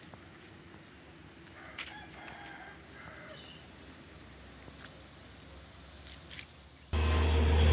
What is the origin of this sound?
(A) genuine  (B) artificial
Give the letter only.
A